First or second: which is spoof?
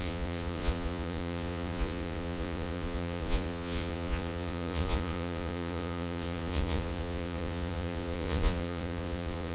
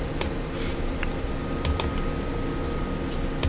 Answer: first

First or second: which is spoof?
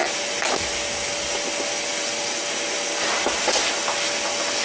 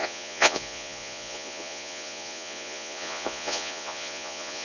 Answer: second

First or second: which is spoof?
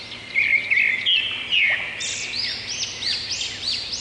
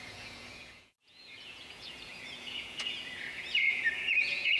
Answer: second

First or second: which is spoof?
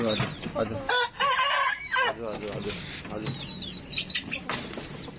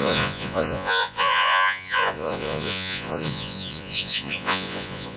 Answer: second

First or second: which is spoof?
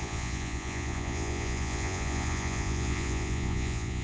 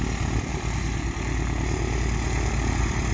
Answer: first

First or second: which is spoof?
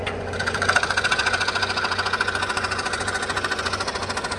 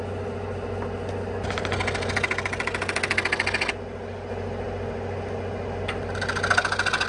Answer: first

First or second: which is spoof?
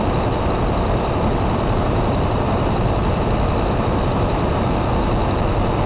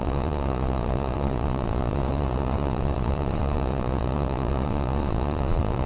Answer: second